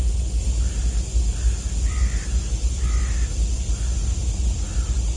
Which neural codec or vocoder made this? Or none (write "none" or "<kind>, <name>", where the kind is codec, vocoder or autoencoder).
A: none